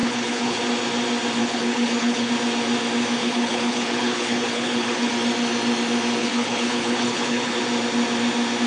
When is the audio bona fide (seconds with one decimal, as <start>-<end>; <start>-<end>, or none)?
0.6-1.4; 2.3-3.2; 5.1-6.2; 7.6-8.7